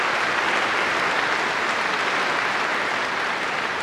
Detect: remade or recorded recorded